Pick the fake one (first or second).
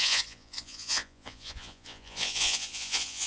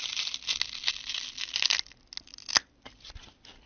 first